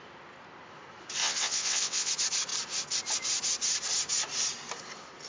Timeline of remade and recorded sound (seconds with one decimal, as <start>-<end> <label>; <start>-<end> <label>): 0.0-1.2 recorded; 1.2-2.1 remade; 2.1-5.3 recorded